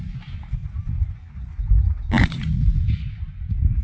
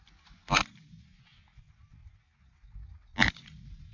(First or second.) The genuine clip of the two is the second